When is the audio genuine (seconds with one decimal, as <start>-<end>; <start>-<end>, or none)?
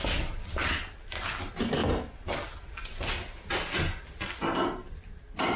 0.0-5.6